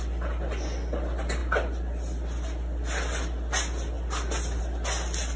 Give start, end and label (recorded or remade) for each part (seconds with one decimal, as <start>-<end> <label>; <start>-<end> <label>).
0.0-5.4 recorded